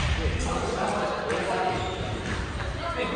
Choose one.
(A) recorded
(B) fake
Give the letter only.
A